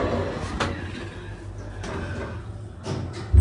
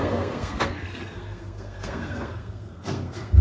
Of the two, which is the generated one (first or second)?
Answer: second